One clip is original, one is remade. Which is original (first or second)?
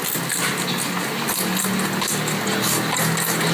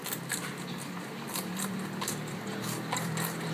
first